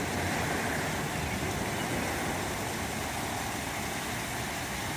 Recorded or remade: recorded